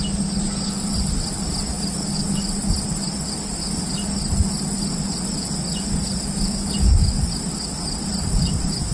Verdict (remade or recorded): recorded